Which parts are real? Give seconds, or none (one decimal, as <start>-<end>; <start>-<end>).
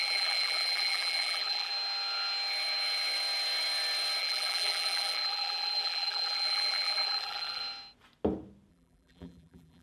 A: 1.7-4.2; 7.6-8.7